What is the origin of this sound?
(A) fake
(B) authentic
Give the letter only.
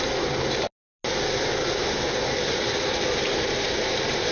B